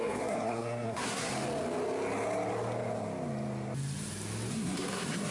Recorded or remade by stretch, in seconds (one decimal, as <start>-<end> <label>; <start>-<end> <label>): 0.0-1.3 remade; 1.3-4.5 recorded; 4.5-5.3 remade